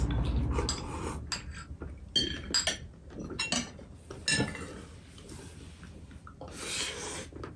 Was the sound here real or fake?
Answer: real